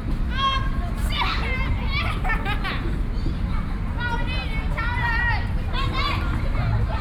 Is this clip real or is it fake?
real